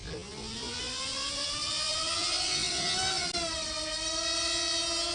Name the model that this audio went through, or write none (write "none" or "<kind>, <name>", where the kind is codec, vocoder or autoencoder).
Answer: none